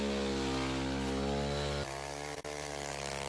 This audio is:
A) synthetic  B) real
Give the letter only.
B